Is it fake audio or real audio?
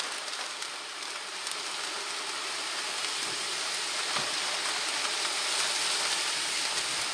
real